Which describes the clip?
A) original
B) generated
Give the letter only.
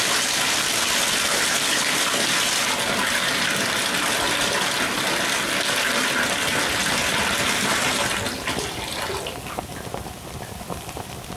A